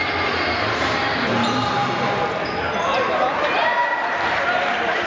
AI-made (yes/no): no